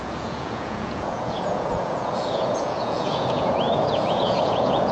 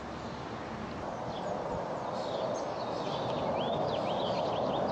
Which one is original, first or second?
second